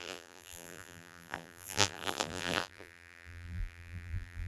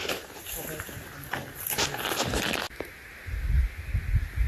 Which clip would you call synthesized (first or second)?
first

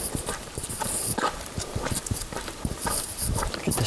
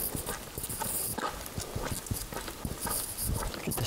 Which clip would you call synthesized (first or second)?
first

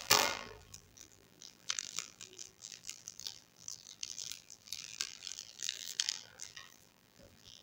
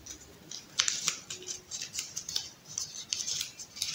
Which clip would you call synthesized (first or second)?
first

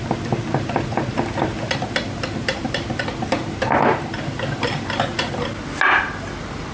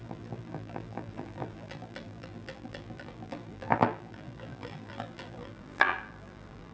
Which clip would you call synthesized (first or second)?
second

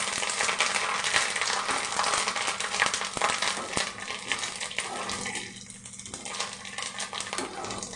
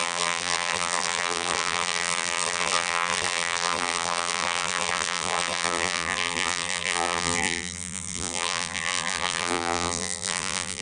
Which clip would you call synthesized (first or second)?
second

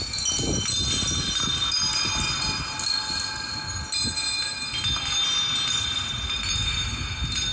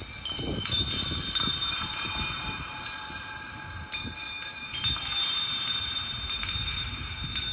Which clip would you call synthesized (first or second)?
second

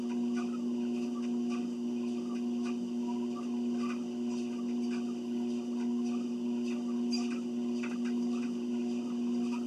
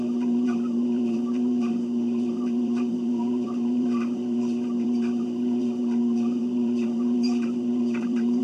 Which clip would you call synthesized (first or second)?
second